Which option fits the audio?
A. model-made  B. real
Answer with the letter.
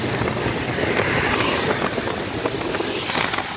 B